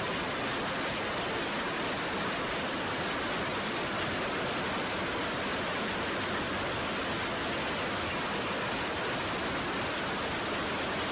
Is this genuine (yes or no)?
yes